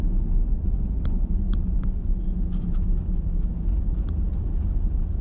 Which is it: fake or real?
real